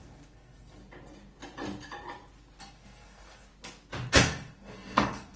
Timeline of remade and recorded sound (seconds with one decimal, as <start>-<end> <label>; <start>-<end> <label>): 0.0-0.8 remade; 0.8-2.6 recorded; 2.6-3.5 remade; 3.5-4.1 recorded; 4.1-5.4 remade